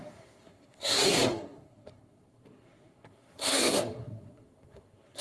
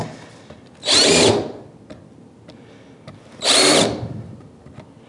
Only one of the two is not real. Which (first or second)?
first